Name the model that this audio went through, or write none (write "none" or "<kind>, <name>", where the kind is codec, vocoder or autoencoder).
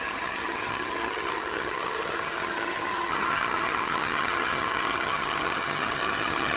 vocoder, HiFi-GAN